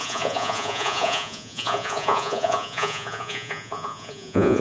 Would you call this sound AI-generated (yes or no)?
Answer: yes